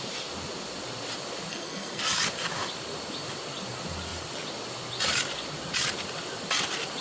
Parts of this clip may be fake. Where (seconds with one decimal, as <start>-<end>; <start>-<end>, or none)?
1.5-2.0